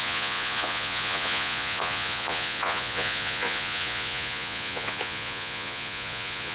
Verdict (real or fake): fake